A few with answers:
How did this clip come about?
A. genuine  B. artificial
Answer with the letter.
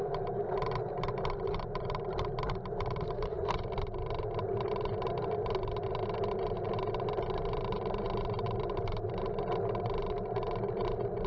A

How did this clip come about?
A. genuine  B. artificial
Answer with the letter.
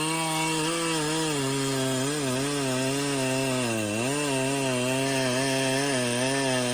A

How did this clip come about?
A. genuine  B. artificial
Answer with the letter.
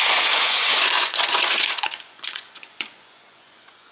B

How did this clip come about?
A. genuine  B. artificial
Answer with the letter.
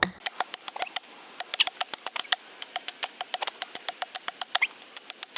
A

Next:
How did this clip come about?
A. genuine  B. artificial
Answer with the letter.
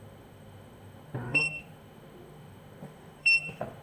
B